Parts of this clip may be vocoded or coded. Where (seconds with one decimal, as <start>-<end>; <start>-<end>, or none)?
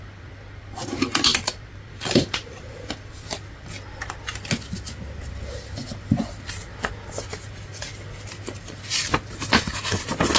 1.3-3.4